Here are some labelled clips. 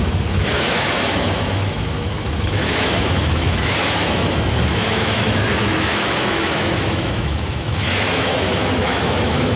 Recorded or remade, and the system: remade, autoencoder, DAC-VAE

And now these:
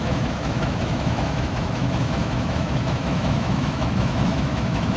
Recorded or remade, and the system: remade, autoencoder, DAC-VAE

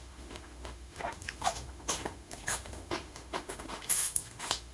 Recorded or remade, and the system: remade, autoencoder, DAC-VAE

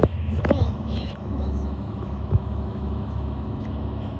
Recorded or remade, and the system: remade, autoencoder, DAC-VAE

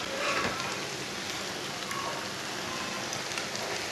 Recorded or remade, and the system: recorded